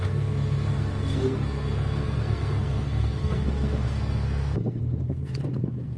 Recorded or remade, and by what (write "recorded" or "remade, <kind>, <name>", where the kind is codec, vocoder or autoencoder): remade, codec, SNAC